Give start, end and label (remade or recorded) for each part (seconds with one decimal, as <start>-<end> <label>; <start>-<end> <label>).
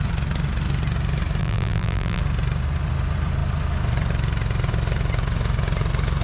0.0-1.4 recorded; 1.4-2.2 remade; 2.2-6.2 recorded